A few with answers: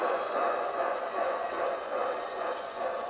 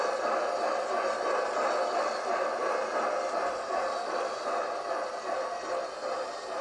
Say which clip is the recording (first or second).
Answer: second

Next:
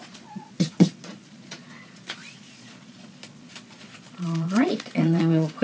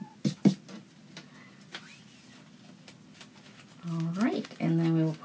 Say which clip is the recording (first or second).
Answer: second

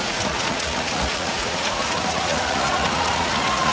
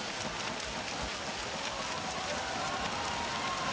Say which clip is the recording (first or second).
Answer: second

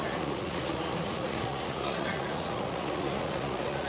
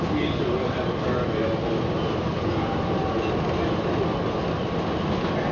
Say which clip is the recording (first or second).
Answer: second